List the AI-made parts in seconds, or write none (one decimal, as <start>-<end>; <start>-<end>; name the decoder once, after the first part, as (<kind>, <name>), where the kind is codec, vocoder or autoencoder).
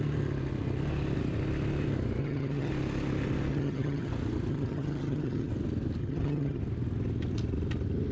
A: 2.2-2.7 (vocoder, HiFi-GAN); 3.5-4.1; 4.5-5.5; 6.0-6.6